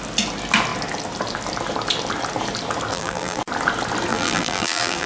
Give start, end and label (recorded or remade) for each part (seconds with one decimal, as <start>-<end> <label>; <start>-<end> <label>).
0.0-2.9 recorded; 2.9-3.4 remade; 3.4-4.1 recorded; 4.1-5.1 remade